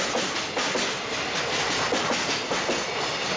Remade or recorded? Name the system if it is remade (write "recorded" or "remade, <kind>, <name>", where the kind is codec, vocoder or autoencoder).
recorded